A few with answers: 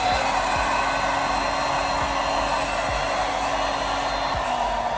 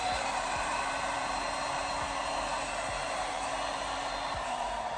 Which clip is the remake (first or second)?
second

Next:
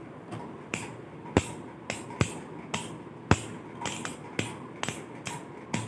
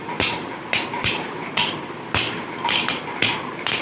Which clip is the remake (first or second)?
second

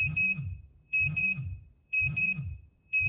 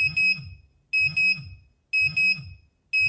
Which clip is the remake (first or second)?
first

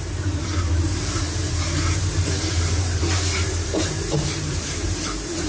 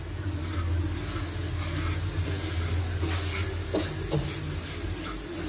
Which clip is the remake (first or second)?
first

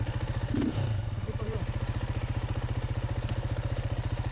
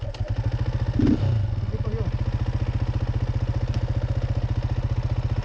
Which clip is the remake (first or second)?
first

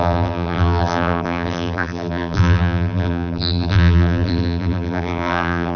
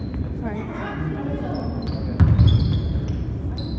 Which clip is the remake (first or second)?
first